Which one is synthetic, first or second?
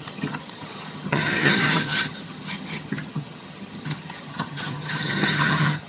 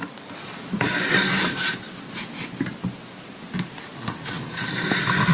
first